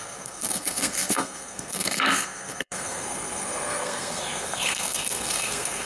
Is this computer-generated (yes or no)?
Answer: yes